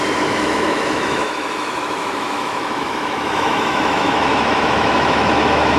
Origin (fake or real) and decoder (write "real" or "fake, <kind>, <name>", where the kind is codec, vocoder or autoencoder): fake, autoencoder, DAC-VAE